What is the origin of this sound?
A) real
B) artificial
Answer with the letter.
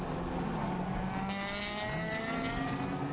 A